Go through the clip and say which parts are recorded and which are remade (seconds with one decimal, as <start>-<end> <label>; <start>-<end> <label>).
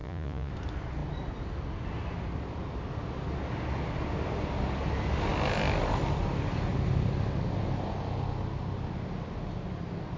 0.0-0.5 remade; 0.5-10.2 recorded